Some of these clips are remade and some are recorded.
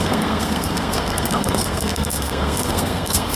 remade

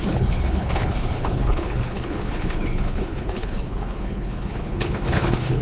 remade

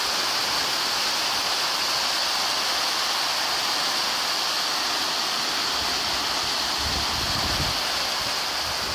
recorded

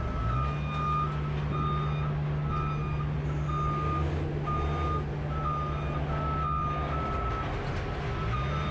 recorded